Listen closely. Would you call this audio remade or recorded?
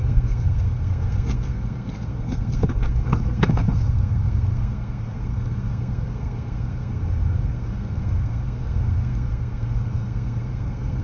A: remade